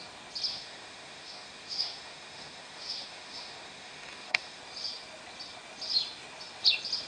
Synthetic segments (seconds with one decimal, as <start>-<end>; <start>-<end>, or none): 0.5-4.6